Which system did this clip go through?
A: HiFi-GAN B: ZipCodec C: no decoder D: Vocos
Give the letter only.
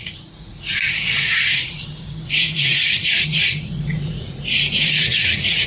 D